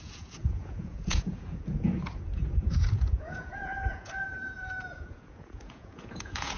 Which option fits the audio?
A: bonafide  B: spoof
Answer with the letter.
B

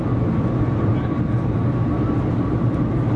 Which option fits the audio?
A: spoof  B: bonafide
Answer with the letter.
B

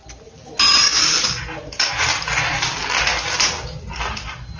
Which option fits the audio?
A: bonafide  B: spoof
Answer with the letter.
A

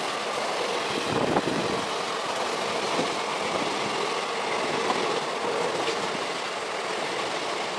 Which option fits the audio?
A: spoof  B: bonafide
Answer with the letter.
B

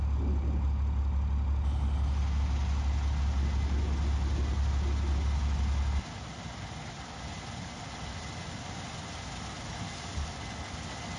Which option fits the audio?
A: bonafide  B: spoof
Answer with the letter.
A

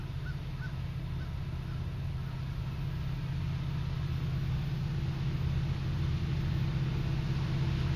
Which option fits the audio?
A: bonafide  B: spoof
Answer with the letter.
A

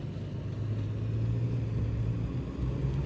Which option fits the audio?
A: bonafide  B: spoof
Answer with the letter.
A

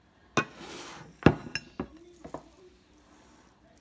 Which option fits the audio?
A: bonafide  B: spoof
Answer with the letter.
A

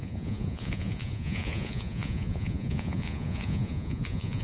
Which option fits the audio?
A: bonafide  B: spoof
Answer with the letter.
B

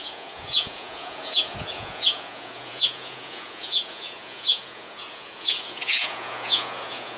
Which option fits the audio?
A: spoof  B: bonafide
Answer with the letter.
A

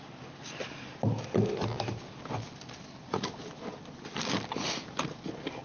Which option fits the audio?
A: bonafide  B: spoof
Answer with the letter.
A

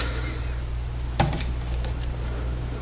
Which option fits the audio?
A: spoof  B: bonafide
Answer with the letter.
B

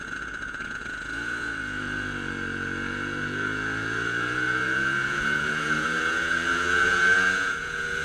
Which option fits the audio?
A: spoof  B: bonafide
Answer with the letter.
A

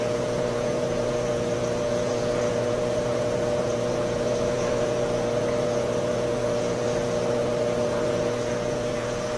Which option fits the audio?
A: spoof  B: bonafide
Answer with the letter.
A